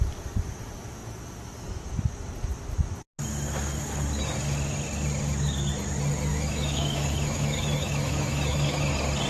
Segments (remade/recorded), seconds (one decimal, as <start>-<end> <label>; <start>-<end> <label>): 0.0-6.3 recorded; 6.3-8.9 remade; 8.9-9.3 recorded